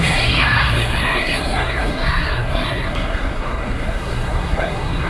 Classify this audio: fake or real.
fake